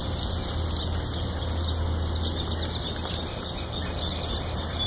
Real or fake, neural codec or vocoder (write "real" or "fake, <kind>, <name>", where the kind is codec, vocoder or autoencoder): real